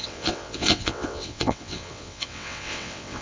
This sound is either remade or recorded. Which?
remade